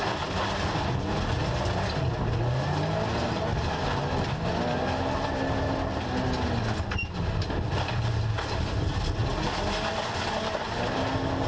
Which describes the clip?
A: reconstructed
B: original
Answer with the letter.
B